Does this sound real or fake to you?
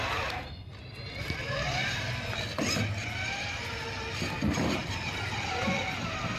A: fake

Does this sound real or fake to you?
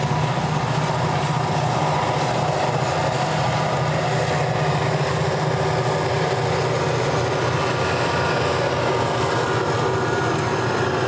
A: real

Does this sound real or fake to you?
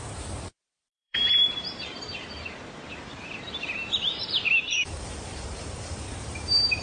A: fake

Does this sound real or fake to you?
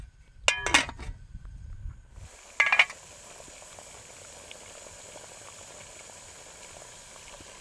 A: real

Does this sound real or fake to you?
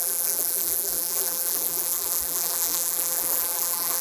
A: fake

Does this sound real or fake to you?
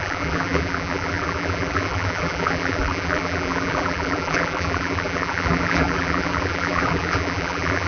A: fake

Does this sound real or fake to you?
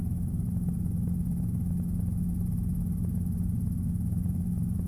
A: real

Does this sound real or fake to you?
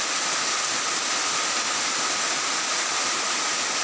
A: real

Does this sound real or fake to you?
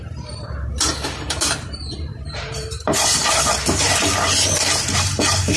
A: fake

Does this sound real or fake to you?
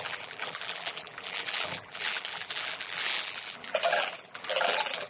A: fake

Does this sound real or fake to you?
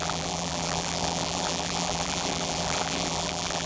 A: fake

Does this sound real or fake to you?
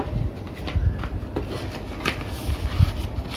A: real